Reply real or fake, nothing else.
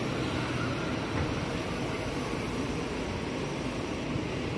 real